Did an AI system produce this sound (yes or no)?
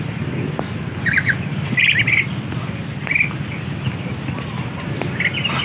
no